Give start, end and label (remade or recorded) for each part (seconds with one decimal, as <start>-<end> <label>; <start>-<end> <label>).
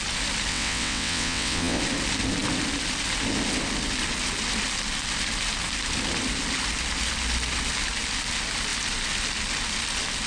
0.0-0.5 recorded; 0.5-1.8 remade; 1.8-10.3 recorded